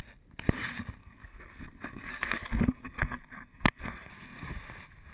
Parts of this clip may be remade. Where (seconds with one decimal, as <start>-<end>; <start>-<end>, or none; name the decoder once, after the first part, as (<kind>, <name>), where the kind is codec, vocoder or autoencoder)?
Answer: 1.0-4.1 (codec, SNAC)